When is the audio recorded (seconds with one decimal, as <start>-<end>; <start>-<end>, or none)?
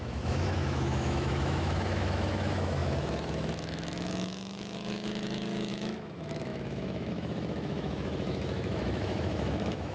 none